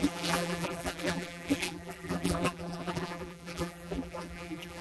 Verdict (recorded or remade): remade